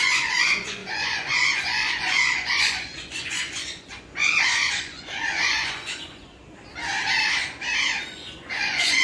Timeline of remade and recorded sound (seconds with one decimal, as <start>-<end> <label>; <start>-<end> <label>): 0.0-6.4 remade; 6.4-8.1 recorded; 8.1-9.0 remade